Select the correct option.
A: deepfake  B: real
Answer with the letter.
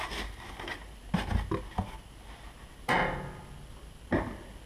B